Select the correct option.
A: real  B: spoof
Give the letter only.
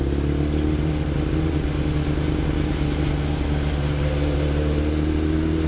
A